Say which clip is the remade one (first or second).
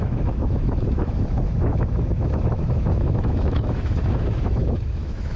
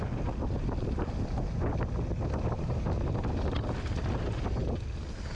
first